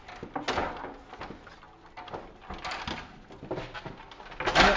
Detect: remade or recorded recorded